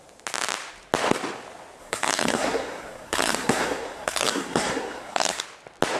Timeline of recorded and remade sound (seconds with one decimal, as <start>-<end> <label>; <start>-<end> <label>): 0.0-1.8 recorded; 1.8-5.4 remade; 5.4-6.0 recorded